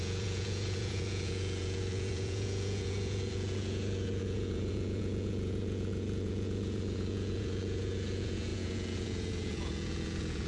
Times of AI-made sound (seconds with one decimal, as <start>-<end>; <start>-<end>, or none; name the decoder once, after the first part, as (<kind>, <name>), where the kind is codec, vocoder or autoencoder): 0.0-10.5 (vocoder, Vocos)